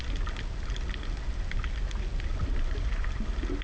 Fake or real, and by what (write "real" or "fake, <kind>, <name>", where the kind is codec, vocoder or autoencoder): real